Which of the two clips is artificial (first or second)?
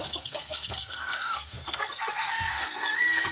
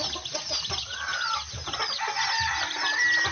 first